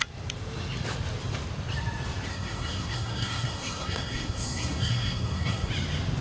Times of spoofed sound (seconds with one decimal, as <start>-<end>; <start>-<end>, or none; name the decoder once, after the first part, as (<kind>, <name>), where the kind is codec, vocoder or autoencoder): 2.3-5.7 (codec, SNAC)